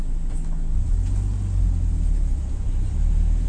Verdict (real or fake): real